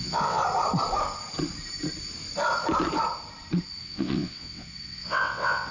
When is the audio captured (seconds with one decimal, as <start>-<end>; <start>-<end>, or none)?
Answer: 0.4-3.8